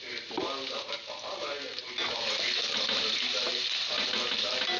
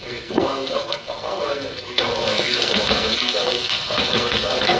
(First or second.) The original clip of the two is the first